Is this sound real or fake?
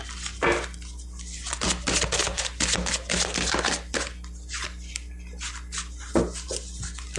real